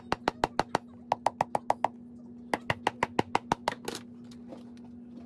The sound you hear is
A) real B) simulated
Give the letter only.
A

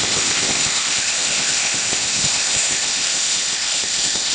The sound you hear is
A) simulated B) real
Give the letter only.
A